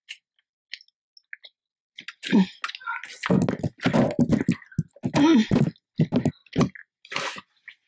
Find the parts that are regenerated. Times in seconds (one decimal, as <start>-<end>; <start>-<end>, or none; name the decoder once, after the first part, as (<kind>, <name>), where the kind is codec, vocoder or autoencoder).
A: none